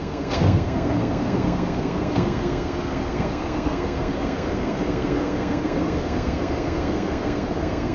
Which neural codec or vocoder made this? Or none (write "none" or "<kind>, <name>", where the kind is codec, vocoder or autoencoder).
codec, SNAC